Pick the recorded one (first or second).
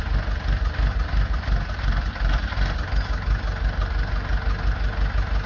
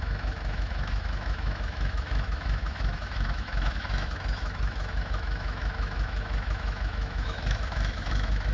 first